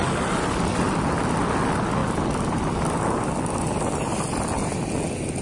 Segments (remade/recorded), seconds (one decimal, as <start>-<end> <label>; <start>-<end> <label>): 0.0-5.4 recorded